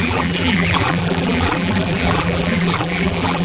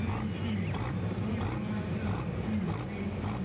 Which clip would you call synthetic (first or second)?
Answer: first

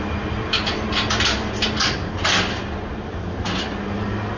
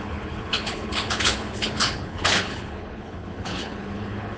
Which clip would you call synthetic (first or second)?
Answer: second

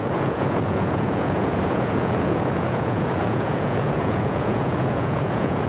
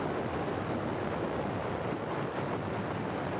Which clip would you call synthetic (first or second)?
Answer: first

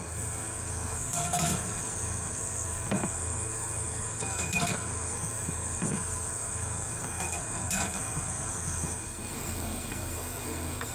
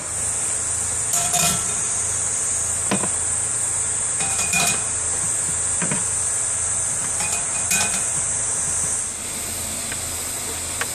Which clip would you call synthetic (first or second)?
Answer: first